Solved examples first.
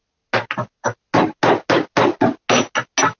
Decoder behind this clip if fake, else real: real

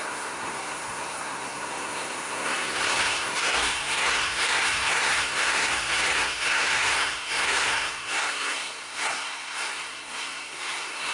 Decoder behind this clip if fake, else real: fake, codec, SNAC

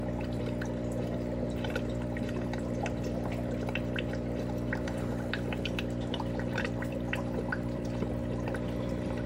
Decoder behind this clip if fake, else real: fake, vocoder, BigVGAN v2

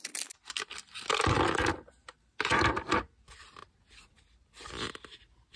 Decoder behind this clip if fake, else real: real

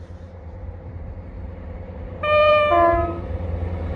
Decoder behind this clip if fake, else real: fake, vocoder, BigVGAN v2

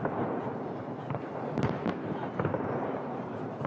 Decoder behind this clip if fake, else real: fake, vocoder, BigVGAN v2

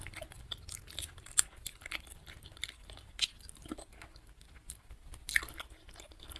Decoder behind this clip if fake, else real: real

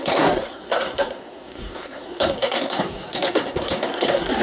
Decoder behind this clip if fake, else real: fake, codec, SNAC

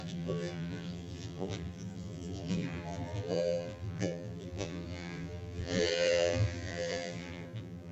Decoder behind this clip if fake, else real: fake, vocoder, BigVGAN v2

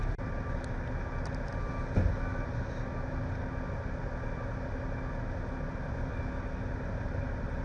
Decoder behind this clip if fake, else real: real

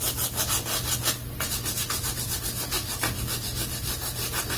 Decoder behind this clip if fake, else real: real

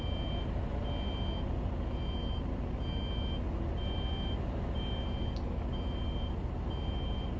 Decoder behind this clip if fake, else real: real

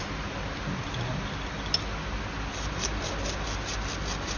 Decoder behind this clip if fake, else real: real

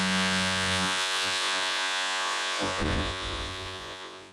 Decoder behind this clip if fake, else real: fake, vocoder, Vocos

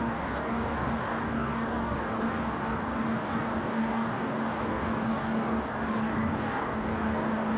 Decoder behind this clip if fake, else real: fake, codec, DAC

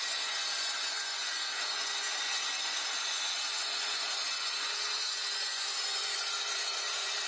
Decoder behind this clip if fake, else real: fake, vocoder, Vocos